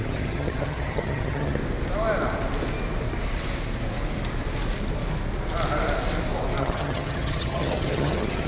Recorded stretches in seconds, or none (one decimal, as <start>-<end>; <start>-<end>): 1.6-6.6